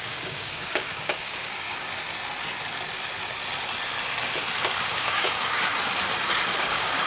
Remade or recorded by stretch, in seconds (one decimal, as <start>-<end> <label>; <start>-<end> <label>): 0.0-1.9 remade; 1.9-4.8 recorded; 4.8-5.7 remade; 5.7-6.6 recorded; 6.6-7.1 remade